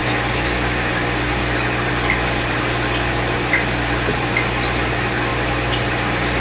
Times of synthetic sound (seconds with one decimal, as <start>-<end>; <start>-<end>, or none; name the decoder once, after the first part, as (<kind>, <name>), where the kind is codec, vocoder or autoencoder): 5.3-6.4 (vocoder, BigVGAN v2)